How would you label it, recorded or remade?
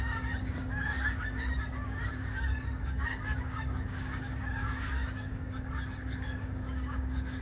remade